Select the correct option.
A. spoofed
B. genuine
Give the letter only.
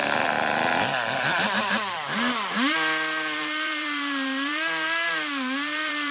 A